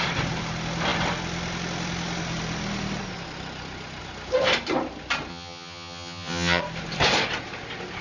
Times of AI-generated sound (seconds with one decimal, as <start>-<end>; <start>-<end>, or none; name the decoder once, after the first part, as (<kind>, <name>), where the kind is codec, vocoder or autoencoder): 5.3-6.6 (vocoder, HiFi-GAN)